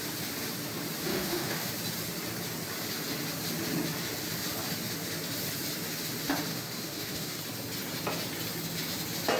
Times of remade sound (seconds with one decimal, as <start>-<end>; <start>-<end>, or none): 1.1-1.7; 6.5-7.4